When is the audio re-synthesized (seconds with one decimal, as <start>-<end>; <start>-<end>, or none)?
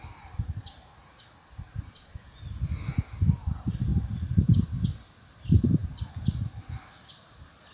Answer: 3.9-5.3